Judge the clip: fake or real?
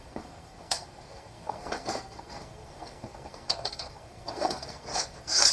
fake